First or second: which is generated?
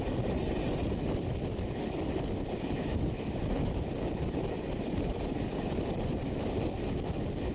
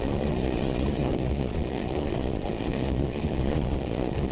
second